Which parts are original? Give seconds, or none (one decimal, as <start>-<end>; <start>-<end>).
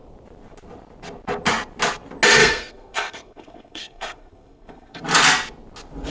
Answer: 0.0-2.4; 5.0-6.1